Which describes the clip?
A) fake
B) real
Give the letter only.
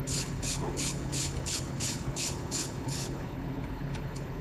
A